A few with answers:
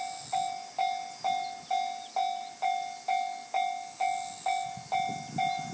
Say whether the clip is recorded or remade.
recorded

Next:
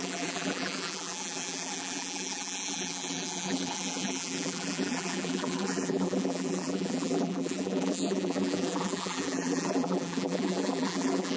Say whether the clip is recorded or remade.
remade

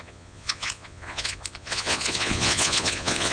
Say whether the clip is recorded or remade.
remade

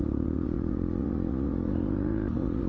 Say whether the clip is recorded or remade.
remade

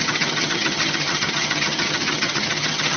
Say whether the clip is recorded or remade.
remade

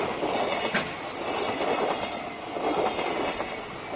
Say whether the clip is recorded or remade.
recorded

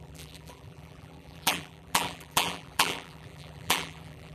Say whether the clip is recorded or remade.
remade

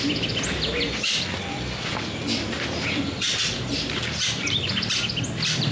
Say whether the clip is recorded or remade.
remade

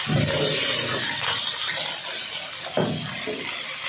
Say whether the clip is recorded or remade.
recorded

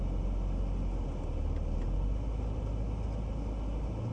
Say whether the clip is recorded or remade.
recorded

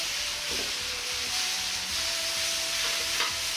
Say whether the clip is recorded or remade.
recorded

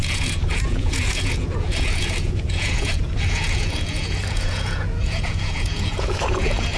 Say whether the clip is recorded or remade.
remade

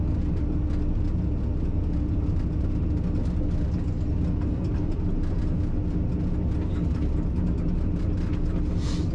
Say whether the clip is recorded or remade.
recorded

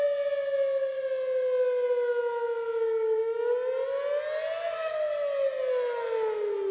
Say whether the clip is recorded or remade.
recorded